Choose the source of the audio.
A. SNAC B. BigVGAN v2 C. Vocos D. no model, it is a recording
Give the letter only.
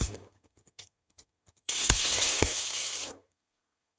A